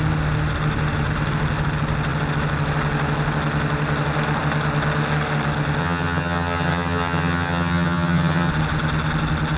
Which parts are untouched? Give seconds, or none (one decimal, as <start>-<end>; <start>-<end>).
0.0-5.8; 8.5-9.6

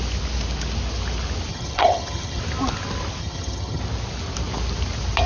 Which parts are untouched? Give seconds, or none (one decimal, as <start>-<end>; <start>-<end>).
0.0-1.5; 2.4-3.2; 3.8-5.3

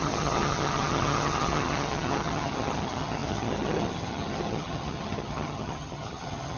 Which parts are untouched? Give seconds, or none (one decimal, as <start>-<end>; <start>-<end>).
none

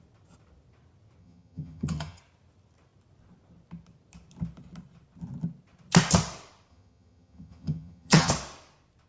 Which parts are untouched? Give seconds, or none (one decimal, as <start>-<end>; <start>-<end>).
0.0-1.2; 2.2-6.7; 8.3-9.1

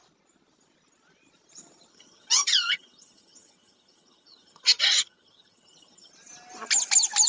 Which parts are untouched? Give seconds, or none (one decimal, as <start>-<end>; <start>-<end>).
0.0-1.9; 6.1-7.3